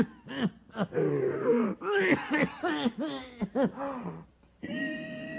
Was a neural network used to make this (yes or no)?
no